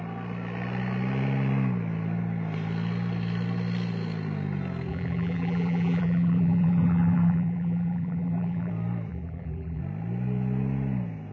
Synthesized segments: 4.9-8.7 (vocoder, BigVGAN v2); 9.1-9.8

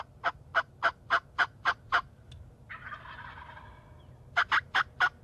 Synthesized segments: none

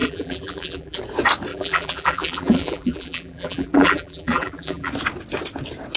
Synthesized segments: 0.0-1.0 (vocoder, BigVGAN v2); 1.5-4.9

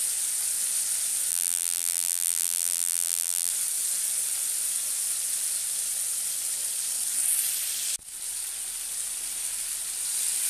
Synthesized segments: 1.3-3.5 (vocoder, BigVGAN v2)

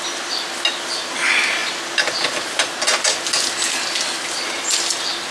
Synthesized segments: none